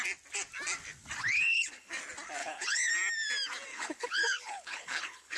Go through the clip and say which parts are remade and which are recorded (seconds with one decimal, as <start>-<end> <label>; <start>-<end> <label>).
0.0-1.2 recorded; 1.2-1.9 remade; 1.9-2.4 recorded; 2.4-2.9 remade; 2.9-3.7 recorded; 3.7-5.4 remade

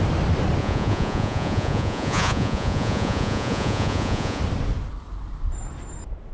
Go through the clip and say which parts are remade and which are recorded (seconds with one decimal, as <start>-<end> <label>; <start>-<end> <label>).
0.0-0.6 recorded; 0.6-4.4 remade; 4.4-6.3 recorded

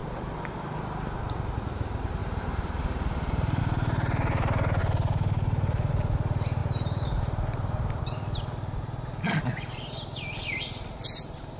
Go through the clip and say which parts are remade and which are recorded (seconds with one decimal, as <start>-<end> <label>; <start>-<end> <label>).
0.0-1.2 remade; 1.2-2.2 recorded; 2.2-3.6 remade; 3.6-4.8 recorded; 4.8-5.9 remade; 5.9-6.6 recorded; 6.6-8.0 remade; 8.0-11.6 recorded

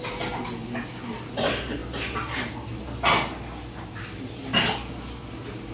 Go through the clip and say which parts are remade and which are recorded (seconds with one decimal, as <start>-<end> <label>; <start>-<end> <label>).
0.0-5.7 recorded

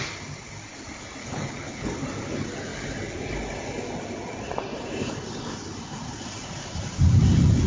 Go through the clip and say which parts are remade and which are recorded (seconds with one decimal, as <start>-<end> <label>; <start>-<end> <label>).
0.0-1.2 recorded; 1.2-1.9 remade; 1.9-7.7 recorded

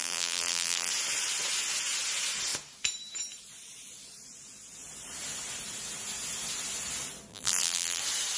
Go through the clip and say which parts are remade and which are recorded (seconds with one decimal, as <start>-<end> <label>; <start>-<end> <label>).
0.0-0.9 remade; 0.9-7.3 recorded; 7.3-8.0 remade; 8.0-8.4 recorded

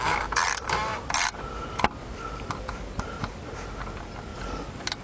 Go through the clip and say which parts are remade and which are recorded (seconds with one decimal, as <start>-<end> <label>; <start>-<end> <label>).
0.0-5.0 recorded